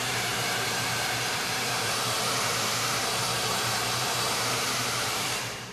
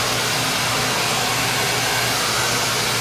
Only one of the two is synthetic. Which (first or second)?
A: first